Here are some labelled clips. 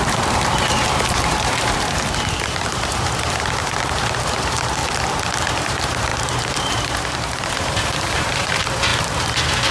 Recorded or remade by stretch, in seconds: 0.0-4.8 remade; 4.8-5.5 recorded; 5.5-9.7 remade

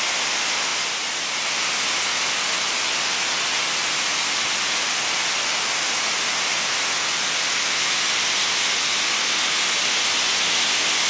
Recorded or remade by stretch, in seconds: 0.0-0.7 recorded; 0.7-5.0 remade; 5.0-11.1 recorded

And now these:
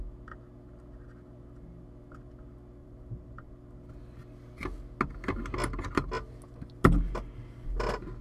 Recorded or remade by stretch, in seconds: 0.0-2.8 recorded; 2.8-3.5 remade; 3.5-8.2 recorded

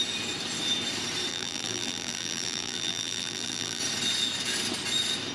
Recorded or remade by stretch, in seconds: 0.0-1.3 recorded; 1.3-3.8 remade; 3.8-5.3 recorded

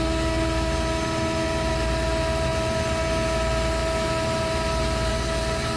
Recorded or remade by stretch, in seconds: 0.0-5.8 recorded

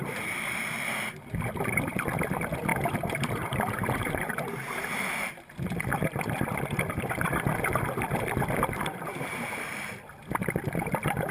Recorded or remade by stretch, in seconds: 0.0-2.7 recorded; 2.7-4.2 remade; 4.2-11.3 recorded

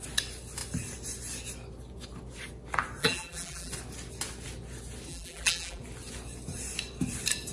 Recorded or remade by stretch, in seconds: 0.0-3.0 recorded; 3.0-3.7 remade; 3.7-5.1 recorded; 5.1-5.8 remade; 5.8-7.5 recorded